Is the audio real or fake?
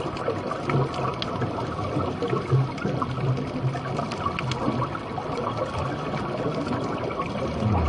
real